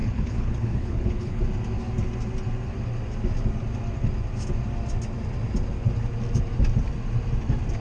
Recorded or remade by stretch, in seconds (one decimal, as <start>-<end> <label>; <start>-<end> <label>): 0.0-1.4 remade; 1.4-7.8 recorded